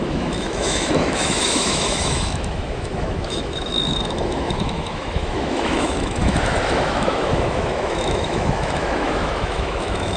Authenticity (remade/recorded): remade